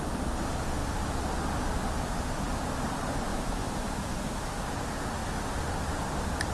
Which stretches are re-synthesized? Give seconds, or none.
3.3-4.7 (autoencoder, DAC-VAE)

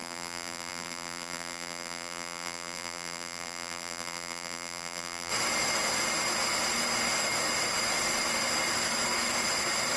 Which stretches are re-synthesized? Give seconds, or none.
0.0-5.3 (vocoder, BigVGAN v2)

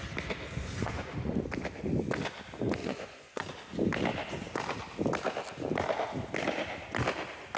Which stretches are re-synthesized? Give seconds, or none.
0.5-1.3 (vocoder, Vocos); 2.8-3.5

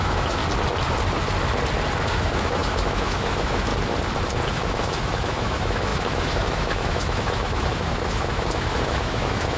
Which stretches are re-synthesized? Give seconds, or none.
0.0-0.4 (autoencoder, DAC-VAE); 2.0-3.7; 4.5-9.6